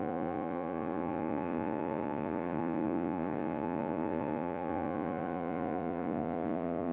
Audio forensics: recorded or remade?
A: remade